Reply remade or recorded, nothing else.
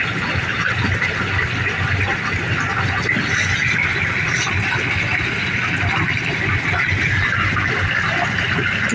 recorded